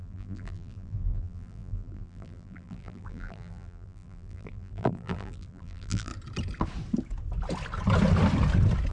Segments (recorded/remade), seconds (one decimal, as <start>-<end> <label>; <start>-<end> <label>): 0.0-6.1 remade; 6.1-8.9 recorded